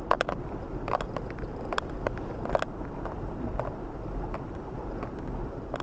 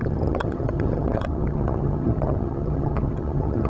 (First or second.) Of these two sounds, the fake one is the second